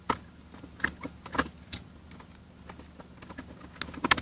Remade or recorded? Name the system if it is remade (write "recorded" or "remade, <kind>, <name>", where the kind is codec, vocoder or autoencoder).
recorded